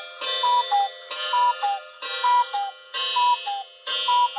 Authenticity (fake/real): real